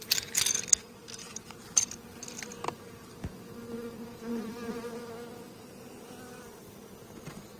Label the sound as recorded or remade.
recorded